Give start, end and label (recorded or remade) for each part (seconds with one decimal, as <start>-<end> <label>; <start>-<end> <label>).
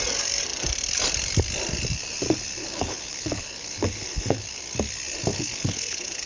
0.0-2.6 recorded; 2.6-4.6 remade; 4.6-5.3 recorded; 5.3-6.3 remade